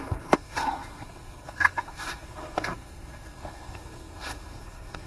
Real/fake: fake